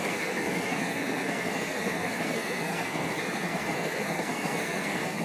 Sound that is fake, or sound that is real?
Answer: fake